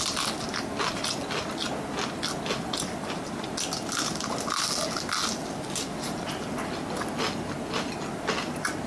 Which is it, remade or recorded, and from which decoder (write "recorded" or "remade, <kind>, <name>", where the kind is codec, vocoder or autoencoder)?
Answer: recorded